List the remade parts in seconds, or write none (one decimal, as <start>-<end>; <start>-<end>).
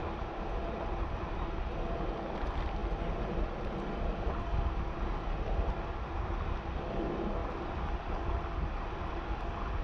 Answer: none